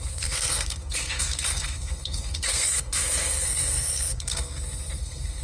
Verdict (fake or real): fake